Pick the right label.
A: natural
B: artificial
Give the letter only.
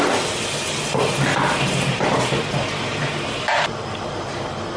A